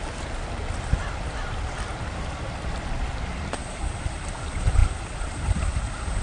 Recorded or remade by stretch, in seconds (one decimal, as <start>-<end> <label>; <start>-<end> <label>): 0.0-6.2 recorded